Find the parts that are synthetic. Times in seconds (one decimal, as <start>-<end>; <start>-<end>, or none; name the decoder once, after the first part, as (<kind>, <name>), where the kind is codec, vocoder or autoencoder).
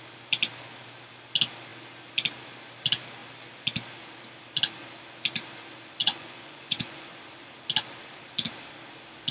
6.0-7.1 (vocoder, Vocos)